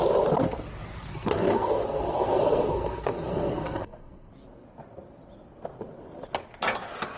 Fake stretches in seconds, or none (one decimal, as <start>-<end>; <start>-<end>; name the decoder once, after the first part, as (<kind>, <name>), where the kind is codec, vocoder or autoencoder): 1.1-4.3 (codec, SNAC)